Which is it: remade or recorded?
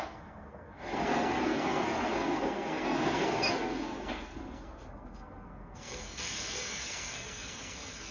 remade